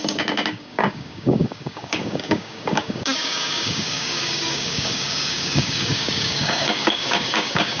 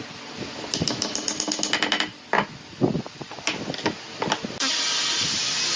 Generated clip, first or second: first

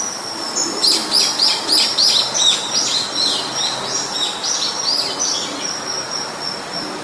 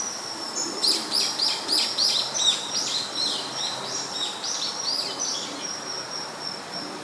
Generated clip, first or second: second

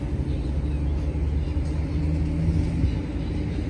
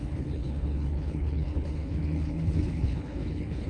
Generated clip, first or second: second